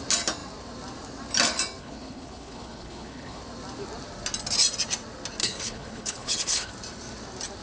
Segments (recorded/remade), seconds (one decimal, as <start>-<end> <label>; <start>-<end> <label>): 0.0-1.8 recorded; 1.8-3.4 remade; 3.4-5.4 recorded; 5.4-6.7 remade; 6.7-7.6 recorded